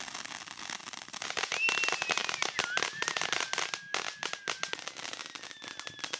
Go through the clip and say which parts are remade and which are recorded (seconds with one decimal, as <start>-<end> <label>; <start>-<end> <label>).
0.0-6.2 recorded